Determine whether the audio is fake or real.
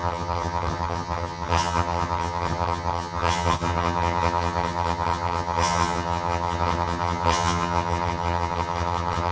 fake